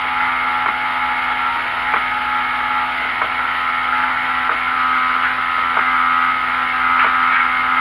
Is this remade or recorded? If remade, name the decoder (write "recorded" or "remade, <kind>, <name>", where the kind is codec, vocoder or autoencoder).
recorded